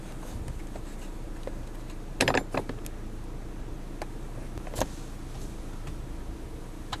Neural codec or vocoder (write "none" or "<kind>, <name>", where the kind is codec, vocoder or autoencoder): none